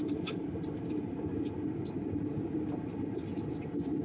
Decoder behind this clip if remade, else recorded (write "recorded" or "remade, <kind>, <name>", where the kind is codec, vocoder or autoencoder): recorded